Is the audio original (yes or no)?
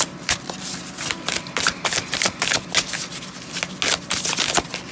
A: yes